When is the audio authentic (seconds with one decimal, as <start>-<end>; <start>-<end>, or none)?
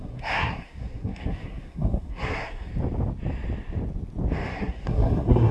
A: 2.7-4.5